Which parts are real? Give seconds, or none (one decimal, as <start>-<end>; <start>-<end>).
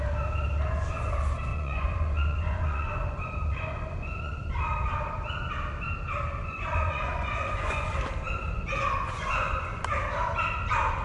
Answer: 0.0-1.5; 4.4-6.4; 7.9-8.4; 9.8-11.0